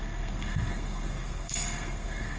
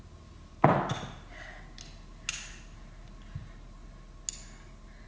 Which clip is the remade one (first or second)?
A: first